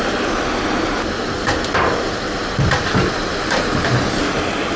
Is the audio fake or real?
real